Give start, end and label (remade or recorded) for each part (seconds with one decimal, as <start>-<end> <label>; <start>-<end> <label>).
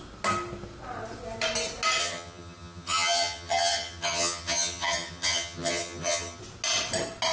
0.0-2.0 recorded; 2.0-6.4 remade; 6.4-7.3 recorded